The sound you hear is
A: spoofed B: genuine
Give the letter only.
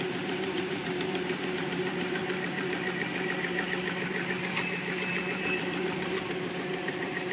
A